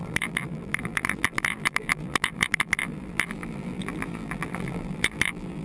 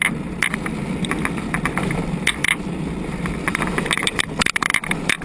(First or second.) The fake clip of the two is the first